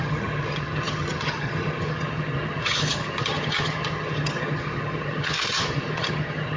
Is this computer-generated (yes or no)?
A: yes